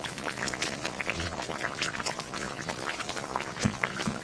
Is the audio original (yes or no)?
no